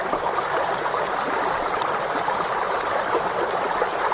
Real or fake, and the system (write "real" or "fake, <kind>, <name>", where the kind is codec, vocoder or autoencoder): real